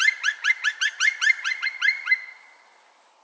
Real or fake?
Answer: real